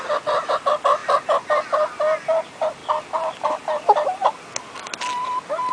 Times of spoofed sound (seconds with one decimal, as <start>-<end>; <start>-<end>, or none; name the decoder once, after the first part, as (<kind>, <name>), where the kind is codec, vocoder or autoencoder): none